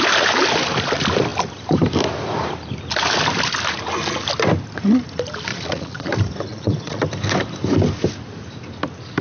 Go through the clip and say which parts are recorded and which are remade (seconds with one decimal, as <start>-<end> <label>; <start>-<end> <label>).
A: 0.0-5.5 recorded; 5.5-6.1 remade; 6.1-6.5 recorded; 6.5-7.0 remade; 7.0-9.2 recorded